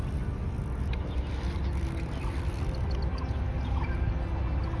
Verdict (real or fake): real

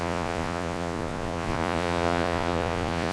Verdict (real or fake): fake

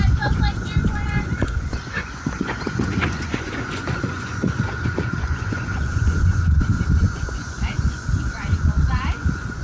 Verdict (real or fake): fake